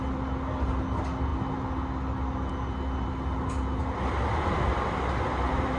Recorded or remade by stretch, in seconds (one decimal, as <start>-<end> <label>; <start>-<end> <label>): 0.0-5.8 recorded